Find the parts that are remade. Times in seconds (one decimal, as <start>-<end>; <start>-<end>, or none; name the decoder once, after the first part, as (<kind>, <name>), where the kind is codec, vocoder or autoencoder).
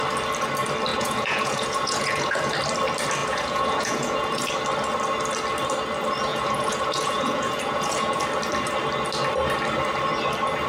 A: 0.9-2.5 (vocoder, Vocos); 3.2-4.5; 6.3-8.2